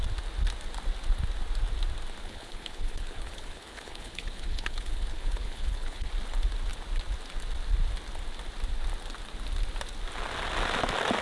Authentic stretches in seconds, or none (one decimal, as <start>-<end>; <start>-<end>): 0.0-2.2; 6.1-11.2

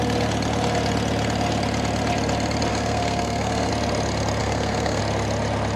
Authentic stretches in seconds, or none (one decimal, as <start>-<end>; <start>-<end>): 0.0-2.7; 3.7-4.4; 5.0-5.8

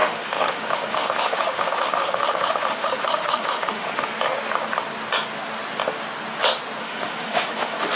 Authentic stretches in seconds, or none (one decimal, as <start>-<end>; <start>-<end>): 4.1-6.8

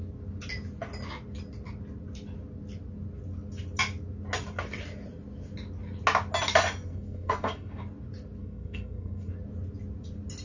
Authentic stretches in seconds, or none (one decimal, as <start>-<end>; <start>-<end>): 0.0-6.9; 7.8-8.4; 9.3-10.4

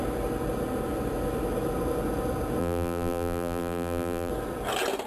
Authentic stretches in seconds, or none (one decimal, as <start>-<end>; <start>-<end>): 0.0-2.6; 4.3-5.1

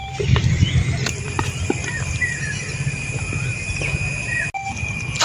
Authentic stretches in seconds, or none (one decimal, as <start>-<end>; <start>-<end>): 3.1-5.2

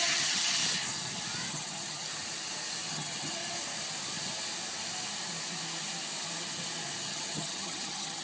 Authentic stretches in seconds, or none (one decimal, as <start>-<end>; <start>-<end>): 0.6-1.5; 2.1-2.9; 3.4-7.0

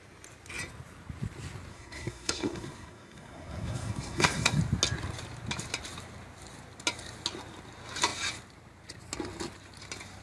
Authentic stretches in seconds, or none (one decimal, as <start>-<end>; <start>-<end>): 0.0-1.7; 4.6-10.2